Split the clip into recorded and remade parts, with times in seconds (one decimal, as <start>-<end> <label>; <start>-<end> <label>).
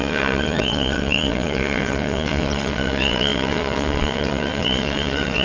0.0-5.4 remade